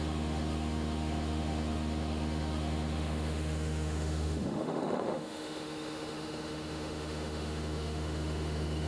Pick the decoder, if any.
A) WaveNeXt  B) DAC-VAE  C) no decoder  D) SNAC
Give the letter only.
B